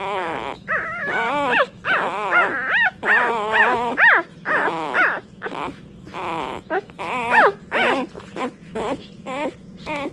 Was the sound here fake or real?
fake